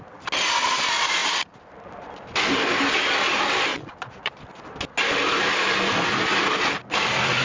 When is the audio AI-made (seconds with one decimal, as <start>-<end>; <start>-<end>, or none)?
3.7-4.4